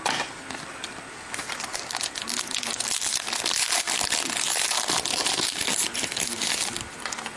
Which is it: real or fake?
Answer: real